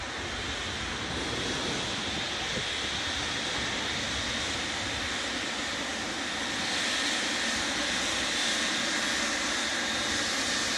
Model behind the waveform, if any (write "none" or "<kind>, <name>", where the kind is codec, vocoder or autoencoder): none